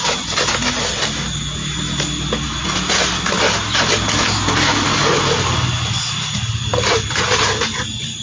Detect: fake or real real